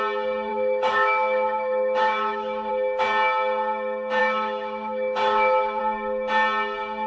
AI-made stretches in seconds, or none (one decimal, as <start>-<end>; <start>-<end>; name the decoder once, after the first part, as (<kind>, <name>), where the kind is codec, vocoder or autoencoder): 0.5-2.7 (autoencoder, DAC-VAE); 4.2-5.8